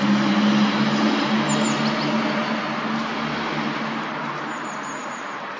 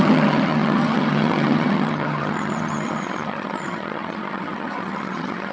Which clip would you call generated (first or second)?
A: second